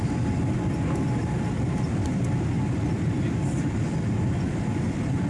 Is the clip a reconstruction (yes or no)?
yes